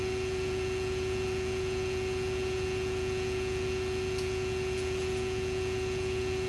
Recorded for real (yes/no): no